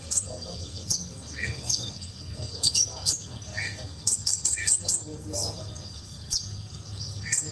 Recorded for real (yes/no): no